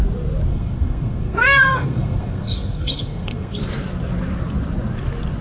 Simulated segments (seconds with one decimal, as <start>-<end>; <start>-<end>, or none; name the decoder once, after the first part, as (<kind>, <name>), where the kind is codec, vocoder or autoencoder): 0.5-3.6 (codec, SNAC)